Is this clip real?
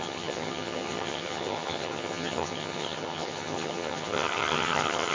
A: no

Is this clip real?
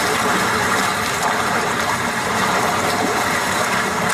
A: no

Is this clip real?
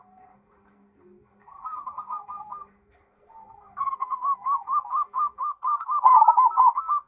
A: no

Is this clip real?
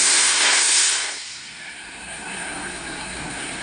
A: no